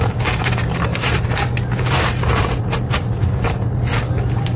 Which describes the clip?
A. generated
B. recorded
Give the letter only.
B